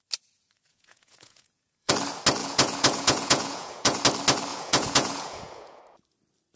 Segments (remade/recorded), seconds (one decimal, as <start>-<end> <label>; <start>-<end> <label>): 0.0-0.7 recorded; 0.7-1.9 remade; 1.9-2.4 recorded; 2.4-4.0 remade; 4.0-4.5 recorded; 4.5-5.8 remade; 5.8-6.6 recorded